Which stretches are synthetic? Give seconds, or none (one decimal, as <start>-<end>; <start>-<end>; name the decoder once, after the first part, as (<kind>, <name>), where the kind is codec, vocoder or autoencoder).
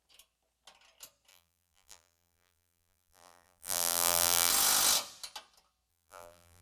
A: 1.3-4.5 (vocoder, BigVGAN v2); 5.9-6.6